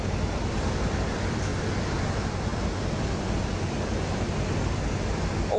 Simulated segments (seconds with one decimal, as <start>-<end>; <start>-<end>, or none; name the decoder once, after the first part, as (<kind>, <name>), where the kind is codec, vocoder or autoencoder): none